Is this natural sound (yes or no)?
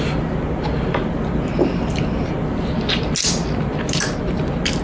yes